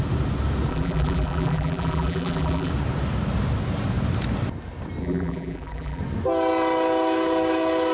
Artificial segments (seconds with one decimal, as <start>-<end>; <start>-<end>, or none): 0.7-2.7; 5.0-6.0

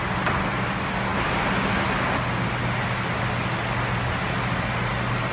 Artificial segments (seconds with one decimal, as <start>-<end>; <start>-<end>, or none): none

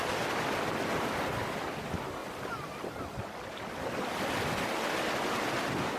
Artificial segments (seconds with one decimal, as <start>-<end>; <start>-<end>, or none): 2.2-4.1